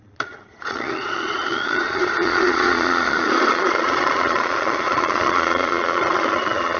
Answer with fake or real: fake